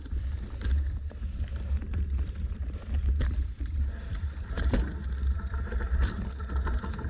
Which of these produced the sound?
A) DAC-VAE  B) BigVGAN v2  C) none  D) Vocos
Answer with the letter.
B